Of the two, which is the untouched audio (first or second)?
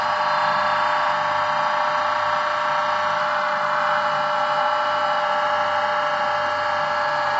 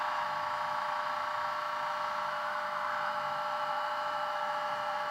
first